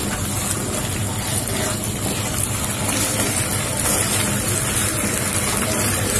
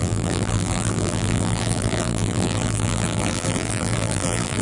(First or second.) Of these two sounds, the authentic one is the first